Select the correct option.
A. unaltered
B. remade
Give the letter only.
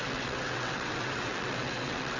B